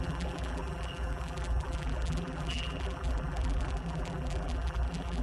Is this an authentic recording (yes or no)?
no